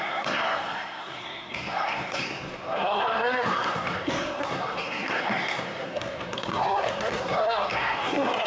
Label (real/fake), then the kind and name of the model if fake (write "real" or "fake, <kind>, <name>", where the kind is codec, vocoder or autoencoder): fake, codec, SNAC